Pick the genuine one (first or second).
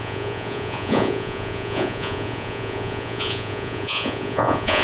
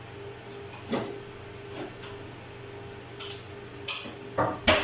second